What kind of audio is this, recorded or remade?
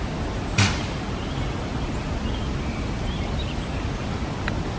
recorded